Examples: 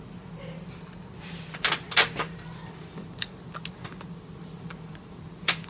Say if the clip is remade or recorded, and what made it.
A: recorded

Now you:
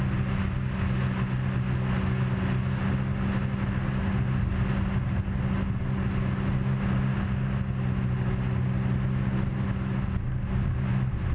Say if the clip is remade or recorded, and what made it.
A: recorded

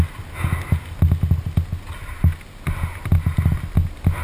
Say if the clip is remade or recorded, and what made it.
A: recorded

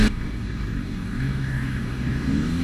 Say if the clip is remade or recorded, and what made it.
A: remade, codec, DAC